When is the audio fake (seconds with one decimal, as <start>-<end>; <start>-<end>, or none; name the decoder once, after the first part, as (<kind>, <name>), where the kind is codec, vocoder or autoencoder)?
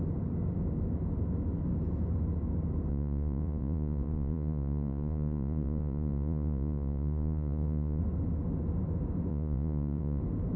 2.9-8.0 (vocoder, Vocos); 9.3-10.2